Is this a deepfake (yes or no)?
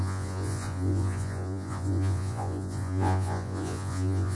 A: yes